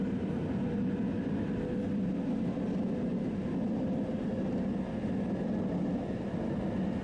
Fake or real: real